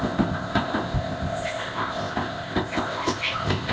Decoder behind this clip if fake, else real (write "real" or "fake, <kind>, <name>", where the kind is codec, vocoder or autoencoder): fake, codec, ZipCodec